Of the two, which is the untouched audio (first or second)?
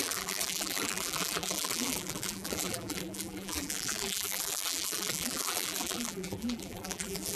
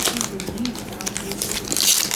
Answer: second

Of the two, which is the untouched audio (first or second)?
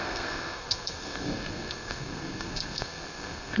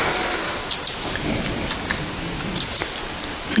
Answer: second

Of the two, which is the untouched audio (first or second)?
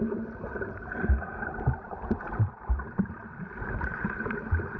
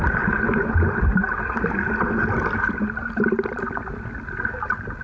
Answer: second